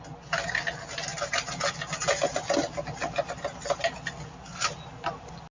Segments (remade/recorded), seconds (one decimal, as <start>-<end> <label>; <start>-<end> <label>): 0.0-5.5 recorded